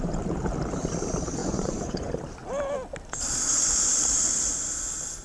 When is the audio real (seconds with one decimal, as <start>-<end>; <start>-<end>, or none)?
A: 0.0-1.4; 2.1-5.2